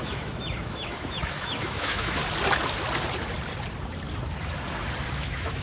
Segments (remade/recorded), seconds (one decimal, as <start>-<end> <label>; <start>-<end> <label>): 0.0-2.2 remade; 2.2-5.1 recorded; 5.1-5.6 remade